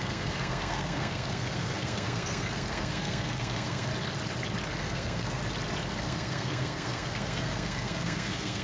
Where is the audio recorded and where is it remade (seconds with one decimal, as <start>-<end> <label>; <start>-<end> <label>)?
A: 0.0-3.9 remade; 3.9-4.8 recorded; 4.8-5.4 remade; 5.4-6.0 recorded; 6.0-8.6 remade